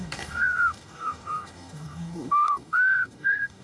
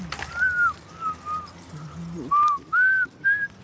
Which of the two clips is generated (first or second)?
first